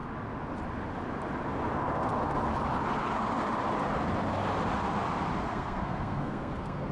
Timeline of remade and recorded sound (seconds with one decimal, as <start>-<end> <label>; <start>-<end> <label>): 0.0-5.5 recorded; 5.5-6.9 remade